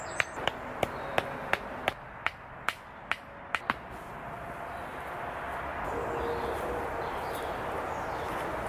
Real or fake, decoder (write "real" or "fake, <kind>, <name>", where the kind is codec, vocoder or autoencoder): real